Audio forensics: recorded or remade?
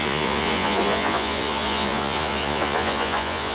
remade